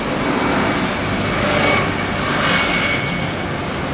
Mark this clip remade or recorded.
recorded